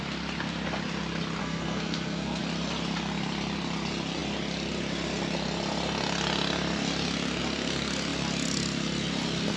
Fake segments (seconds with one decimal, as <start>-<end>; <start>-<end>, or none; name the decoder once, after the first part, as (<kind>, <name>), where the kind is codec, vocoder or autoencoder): 1.4-2.4 (codec, SNAC)

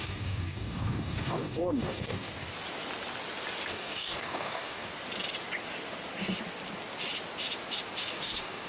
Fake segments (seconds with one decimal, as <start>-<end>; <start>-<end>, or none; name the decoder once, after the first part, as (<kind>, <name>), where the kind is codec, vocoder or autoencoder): 0.0-2.3 (codec, DAC); 3.7-4.9; 8.0-8.7

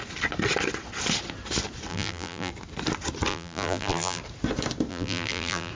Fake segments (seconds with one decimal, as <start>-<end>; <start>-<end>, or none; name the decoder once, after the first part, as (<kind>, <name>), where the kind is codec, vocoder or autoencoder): 1.9-2.5 (vocoder, BigVGAN v2); 3.3-4.2; 4.9-5.7

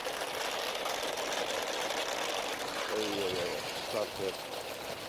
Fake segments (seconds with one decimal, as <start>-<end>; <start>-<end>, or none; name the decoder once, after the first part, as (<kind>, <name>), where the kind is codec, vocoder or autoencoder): none

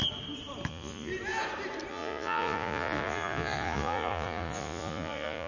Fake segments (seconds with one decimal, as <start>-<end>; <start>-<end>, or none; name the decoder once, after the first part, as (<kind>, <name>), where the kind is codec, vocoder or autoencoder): 0.7-1.1 (vocoder, Vocos); 1.9-5.5

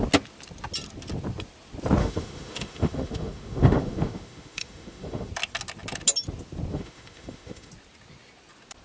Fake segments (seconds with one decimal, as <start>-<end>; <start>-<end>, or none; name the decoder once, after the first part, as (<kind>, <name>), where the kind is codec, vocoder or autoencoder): 2.0-5.3 (autoencoder, DAC-VAE); 6.7-7.7